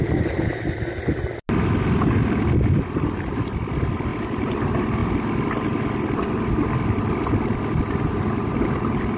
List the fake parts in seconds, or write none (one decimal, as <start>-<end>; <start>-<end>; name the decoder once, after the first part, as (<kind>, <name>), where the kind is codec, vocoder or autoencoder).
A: none